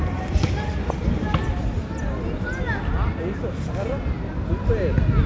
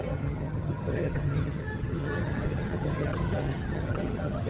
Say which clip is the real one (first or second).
first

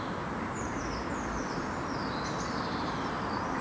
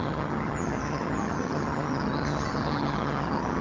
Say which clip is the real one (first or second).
first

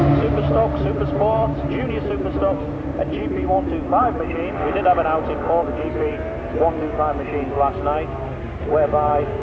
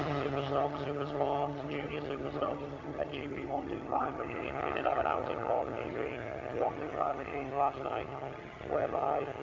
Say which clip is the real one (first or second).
first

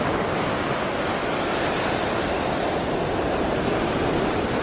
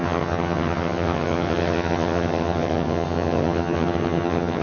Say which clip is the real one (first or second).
first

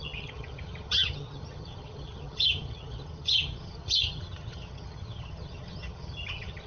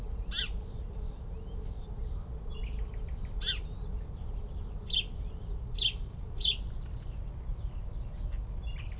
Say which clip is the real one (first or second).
second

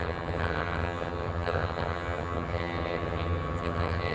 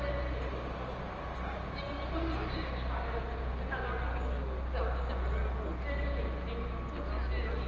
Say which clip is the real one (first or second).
second